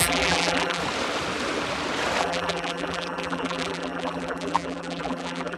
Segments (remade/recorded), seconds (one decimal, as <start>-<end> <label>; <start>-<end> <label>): 0.0-0.8 remade; 0.8-2.2 recorded; 2.2-5.6 remade